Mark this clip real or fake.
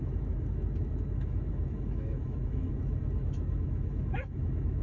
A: fake